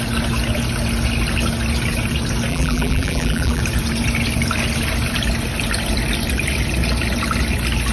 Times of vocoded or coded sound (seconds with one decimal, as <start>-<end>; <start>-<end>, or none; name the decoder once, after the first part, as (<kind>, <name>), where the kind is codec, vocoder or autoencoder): 2.5-3.6 (vocoder, BigVGAN v2)